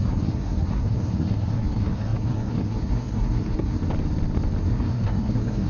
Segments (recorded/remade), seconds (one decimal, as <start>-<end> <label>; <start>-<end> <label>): 0.0-3.8 remade; 3.8-4.6 recorded; 4.6-5.7 remade